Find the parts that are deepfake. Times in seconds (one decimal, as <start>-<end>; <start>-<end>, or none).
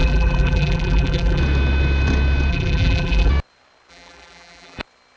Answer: 0.0-1.4; 2.5-3.3; 3.9-4.8